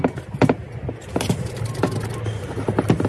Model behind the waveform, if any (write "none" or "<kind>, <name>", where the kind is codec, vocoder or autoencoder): none